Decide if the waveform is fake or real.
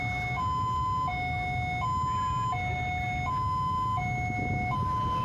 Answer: real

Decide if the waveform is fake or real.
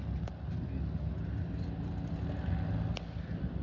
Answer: real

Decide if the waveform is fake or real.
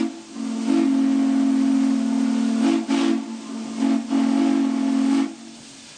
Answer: real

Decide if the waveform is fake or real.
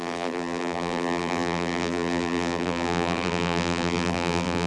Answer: fake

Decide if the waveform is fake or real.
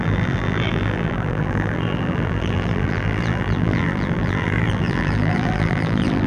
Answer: fake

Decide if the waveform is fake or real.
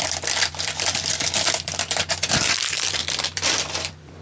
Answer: fake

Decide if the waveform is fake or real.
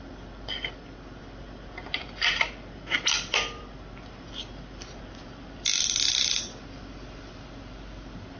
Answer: fake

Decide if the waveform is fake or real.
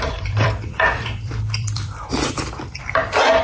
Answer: fake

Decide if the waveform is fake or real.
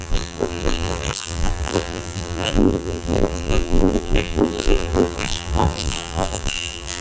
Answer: fake